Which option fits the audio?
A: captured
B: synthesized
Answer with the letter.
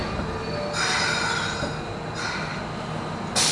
A